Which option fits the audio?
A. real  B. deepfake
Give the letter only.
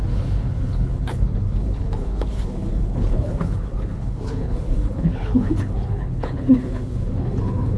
B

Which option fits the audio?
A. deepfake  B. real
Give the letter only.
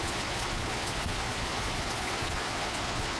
A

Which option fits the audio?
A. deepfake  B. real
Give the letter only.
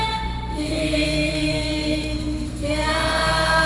A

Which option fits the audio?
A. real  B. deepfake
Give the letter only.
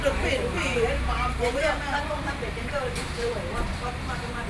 B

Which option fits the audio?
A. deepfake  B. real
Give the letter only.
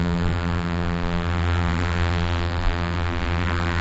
A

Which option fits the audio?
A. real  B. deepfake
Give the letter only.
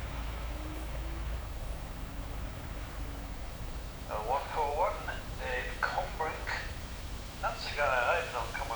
B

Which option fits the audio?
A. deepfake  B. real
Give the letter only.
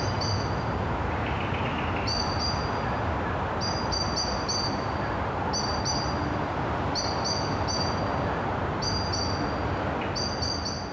B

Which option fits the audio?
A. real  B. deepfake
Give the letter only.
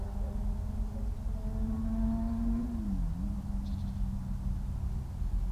A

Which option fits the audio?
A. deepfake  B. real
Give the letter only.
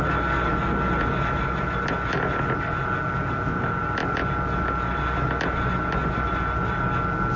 B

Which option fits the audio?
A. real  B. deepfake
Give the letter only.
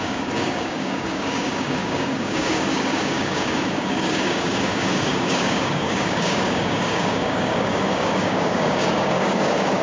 B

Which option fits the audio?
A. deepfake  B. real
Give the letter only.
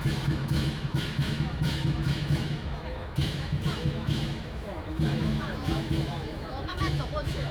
A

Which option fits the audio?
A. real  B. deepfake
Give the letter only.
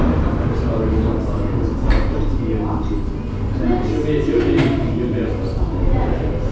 A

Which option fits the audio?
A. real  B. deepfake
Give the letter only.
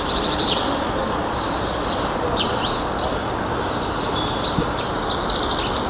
A